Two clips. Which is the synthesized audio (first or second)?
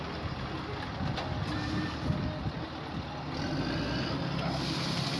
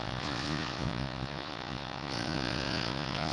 second